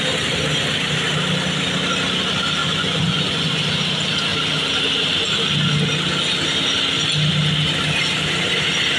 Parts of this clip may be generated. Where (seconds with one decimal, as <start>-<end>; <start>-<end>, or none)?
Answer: 2.6-3.6